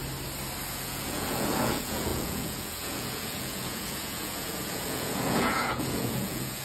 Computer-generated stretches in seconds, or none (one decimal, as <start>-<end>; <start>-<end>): 0.7-6.6